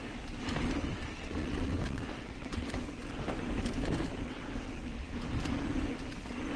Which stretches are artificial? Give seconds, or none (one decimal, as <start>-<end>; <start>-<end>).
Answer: 1.4-2.7; 4.1-4.7